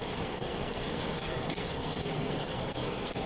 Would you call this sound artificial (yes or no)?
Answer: yes